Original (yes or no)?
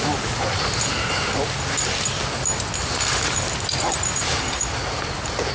yes